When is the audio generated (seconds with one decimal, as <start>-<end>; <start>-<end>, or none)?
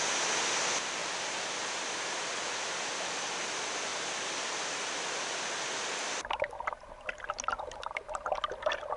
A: none